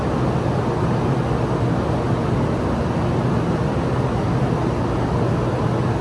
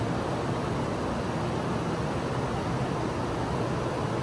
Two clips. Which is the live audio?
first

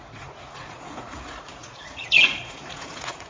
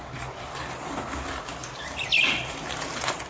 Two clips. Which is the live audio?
second